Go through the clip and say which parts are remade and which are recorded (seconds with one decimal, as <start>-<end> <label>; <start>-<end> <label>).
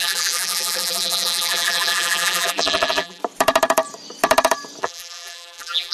0.0-3.2 remade; 3.2-4.8 recorded; 4.8-5.9 remade